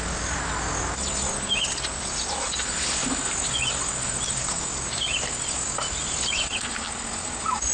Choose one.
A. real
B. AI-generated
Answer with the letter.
A